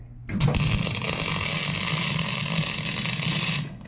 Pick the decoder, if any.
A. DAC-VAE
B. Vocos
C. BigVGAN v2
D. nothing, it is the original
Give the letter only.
D